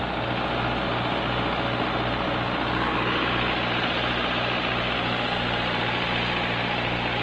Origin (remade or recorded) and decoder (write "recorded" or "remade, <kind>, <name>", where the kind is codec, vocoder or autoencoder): recorded